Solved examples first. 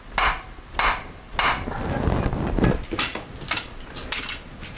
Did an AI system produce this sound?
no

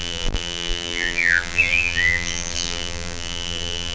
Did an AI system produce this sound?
yes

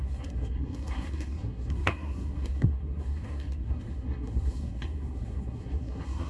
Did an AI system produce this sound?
yes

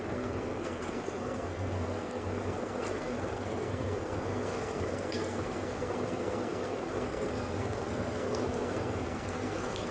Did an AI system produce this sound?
yes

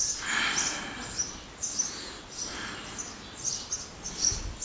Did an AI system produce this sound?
no